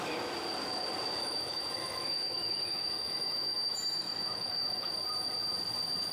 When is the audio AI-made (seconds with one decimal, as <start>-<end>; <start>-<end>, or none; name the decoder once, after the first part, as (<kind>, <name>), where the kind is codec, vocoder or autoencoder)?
1.2-4.9 (autoencoder, DAC-VAE)